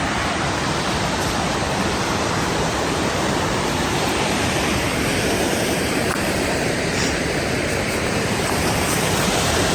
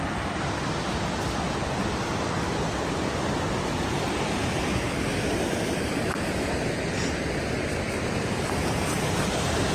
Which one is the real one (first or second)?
second